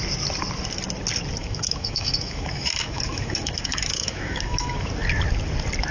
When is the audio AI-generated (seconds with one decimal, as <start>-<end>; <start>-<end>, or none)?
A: 1.4-4.9